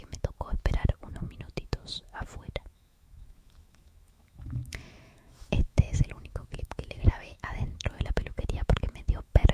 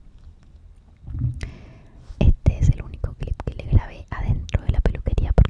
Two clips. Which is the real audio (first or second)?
second